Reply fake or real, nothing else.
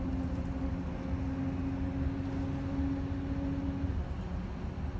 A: real